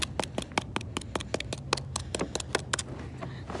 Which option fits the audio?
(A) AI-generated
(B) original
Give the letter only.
B